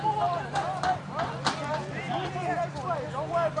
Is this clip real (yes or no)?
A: no